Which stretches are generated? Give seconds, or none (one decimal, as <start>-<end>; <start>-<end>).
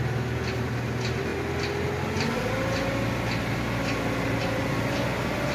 none